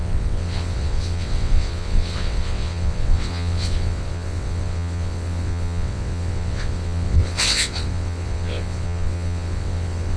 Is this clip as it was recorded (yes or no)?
no